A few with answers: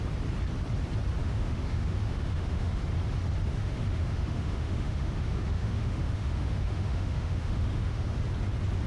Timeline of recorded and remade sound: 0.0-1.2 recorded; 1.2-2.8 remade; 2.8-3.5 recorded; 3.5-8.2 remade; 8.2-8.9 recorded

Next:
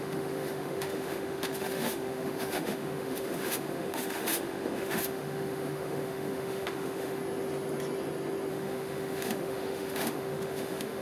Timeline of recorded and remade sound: 0.0-7.2 remade; 7.2-8.5 recorded; 8.5-11.0 remade